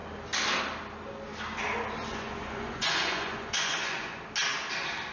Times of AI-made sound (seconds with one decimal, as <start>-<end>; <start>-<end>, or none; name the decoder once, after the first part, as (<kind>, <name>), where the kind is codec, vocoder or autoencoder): 2.1-4.2 (vocoder, Vocos)